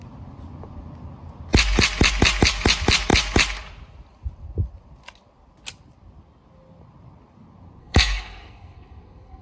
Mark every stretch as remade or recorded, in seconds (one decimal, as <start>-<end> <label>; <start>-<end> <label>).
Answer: 0.0-7.8 recorded; 7.8-9.4 remade